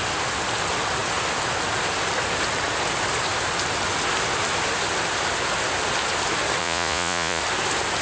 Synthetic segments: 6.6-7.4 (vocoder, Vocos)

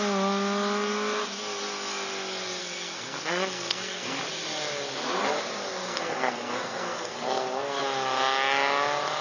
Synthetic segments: 2.6-4.2 (codec, SNAC); 5.8-7.8

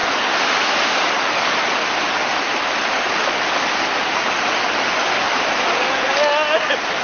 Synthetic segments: none

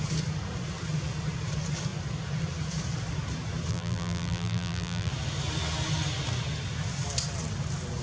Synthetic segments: 3.7-5.1 (vocoder, BigVGAN v2)

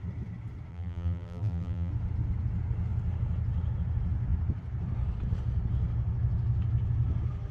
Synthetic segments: 0.7-1.9 (vocoder, BigVGAN v2)

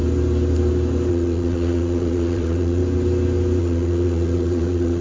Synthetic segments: 1.1-2.8 (vocoder, Vocos); 3.6-5.0

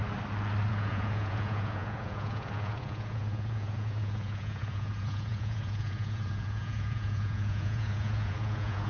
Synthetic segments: 0.7-8.9 (vocoder, Vocos)